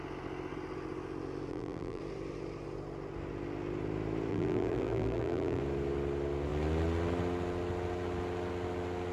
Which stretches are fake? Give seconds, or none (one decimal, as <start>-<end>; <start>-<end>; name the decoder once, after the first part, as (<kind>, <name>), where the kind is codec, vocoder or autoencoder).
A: 1.5-2.0 (vocoder, BigVGAN v2); 4.3-5.6